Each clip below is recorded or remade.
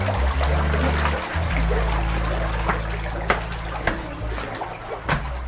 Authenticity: recorded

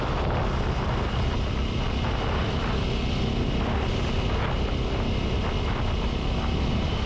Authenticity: recorded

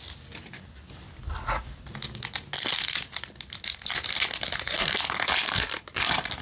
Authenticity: recorded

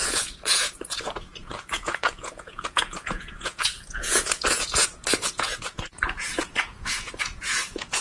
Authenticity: remade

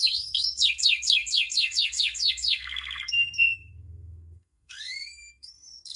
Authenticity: remade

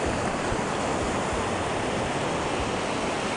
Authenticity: recorded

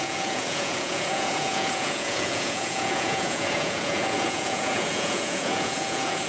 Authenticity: remade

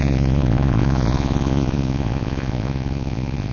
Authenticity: remade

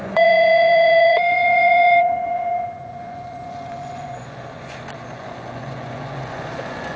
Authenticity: remade